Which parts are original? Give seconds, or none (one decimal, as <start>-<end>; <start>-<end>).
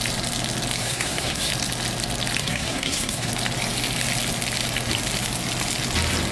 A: 0.0-0.8; 1.5-2.4; 3.3-6.3